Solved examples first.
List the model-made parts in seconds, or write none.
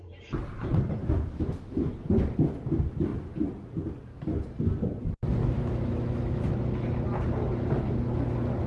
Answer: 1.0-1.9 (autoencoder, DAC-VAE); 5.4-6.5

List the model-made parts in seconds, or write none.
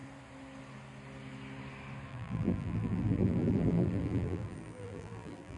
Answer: 2.1-5.6 (vocoder, BigVGAN v2)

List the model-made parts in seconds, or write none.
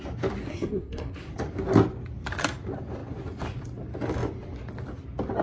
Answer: 0.4-1.3 (codec, SNAC)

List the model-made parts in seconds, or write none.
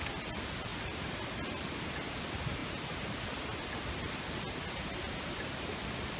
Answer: none